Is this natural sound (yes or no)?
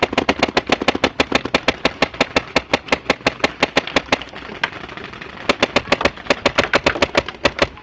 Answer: yes